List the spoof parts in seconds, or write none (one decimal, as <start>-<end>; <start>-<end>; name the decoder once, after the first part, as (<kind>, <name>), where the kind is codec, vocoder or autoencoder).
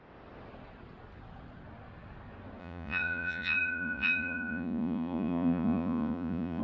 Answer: 2.6-6.6 (vocoder, Vocos)